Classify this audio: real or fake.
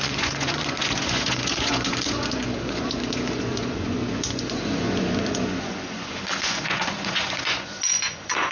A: fake